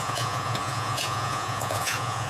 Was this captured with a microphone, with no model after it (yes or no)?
no